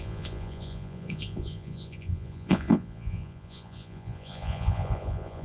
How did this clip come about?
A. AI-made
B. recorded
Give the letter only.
A